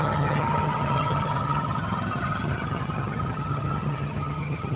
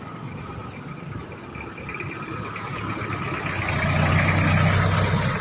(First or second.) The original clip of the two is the second